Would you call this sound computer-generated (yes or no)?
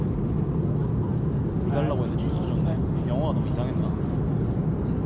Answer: no